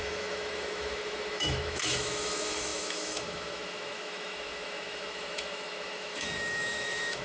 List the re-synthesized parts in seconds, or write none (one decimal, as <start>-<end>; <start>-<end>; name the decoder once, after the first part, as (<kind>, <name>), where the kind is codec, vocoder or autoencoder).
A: 0.0-7.2 (autoencoder, DAC-VAE)